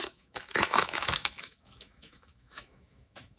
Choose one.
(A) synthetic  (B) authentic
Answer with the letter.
A